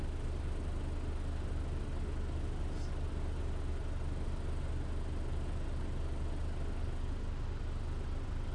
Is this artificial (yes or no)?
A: no